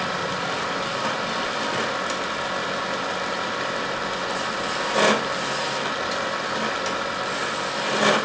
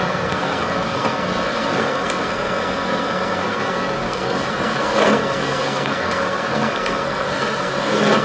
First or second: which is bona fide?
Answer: first